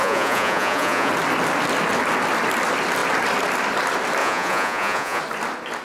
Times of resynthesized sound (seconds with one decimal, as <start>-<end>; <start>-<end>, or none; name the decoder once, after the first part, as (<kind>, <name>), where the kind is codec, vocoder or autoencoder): 0.0-1.1 (vocoder, Vocos); 4.2-5.2